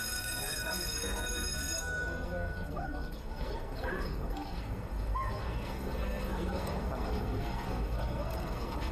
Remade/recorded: remade